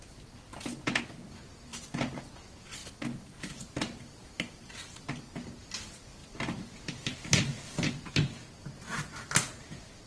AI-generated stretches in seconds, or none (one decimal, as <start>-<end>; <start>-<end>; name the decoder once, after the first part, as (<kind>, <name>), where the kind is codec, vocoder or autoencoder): 1.7-2.3 (vocoder, BigVGAN v2); 2.8-5.5; 6.2-8.1